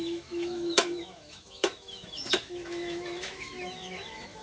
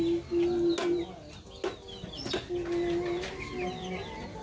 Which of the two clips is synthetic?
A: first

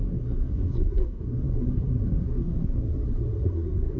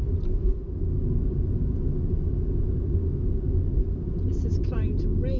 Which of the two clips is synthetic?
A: first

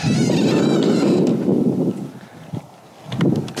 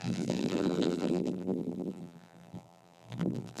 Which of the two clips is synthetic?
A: second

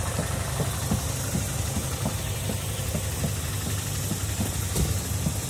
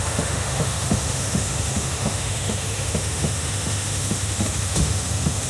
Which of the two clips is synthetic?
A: second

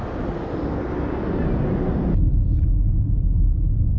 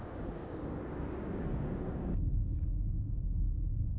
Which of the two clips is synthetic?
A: second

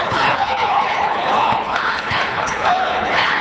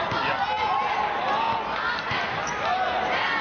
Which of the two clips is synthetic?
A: first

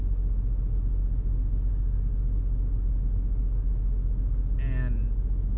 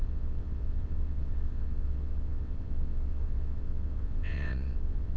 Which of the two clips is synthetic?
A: second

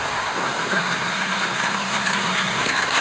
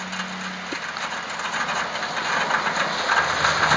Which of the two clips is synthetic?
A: first